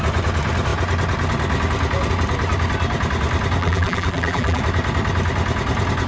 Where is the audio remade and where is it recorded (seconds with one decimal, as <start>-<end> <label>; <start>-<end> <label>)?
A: 0.0-3.6 recorded; 3.6-4.6 remade; 4.6-6.1 recorded